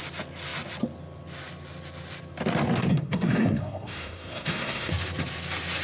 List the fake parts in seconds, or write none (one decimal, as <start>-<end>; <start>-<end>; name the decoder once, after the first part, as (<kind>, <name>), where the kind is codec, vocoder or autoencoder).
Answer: 2.9-4.9 (codec, SNAC)